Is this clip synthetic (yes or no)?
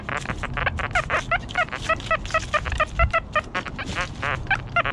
no